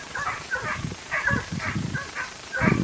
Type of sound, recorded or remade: remade